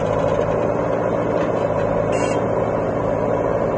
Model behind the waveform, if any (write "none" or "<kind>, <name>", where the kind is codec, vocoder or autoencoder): none